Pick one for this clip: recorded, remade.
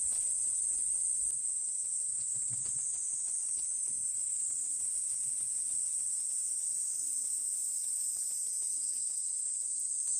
recorded